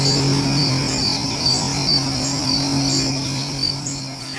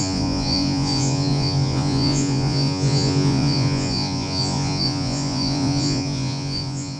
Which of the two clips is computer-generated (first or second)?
second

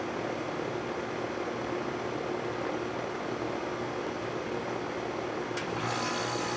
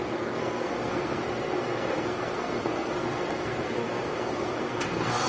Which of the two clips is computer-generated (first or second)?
second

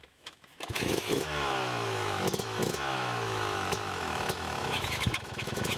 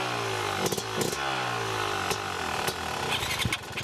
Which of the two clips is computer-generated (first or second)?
first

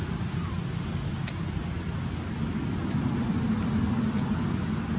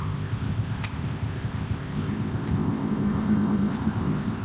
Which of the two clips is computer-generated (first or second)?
second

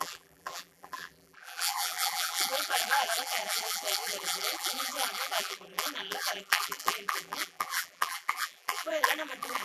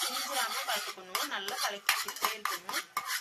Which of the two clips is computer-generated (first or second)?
first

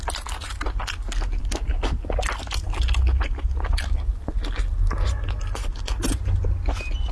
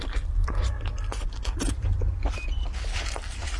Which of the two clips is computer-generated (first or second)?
second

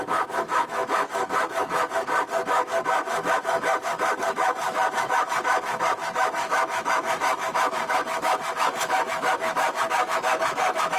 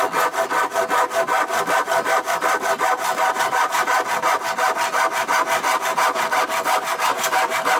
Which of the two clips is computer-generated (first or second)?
first